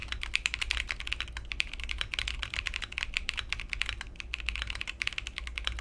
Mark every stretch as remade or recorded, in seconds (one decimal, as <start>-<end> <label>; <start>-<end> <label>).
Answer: 0.0-5.8 recorded